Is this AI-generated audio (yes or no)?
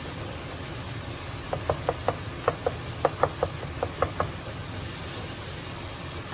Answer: no